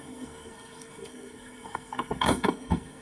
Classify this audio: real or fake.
fake